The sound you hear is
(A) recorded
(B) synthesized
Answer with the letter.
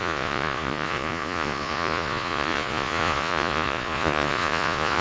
B